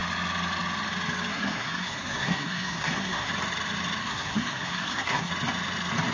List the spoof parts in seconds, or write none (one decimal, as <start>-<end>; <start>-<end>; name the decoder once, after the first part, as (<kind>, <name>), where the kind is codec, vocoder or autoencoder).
1.3-3.3 (codec, SNAC); 4.0-5.3